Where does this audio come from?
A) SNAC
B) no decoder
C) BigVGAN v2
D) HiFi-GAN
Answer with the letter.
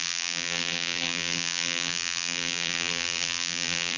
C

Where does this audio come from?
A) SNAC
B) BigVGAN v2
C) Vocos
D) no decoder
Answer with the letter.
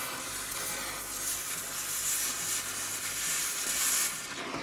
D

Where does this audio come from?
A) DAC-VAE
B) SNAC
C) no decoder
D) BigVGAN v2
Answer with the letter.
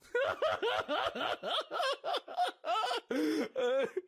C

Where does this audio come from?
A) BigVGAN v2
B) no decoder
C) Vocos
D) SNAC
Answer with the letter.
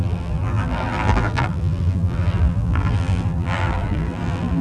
A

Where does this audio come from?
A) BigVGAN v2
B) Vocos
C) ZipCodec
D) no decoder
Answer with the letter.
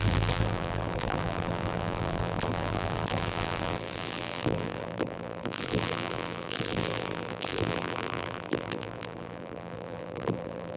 A